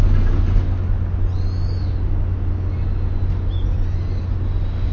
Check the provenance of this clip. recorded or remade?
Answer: recorded